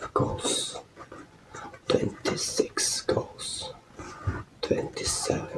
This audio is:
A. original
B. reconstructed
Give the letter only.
B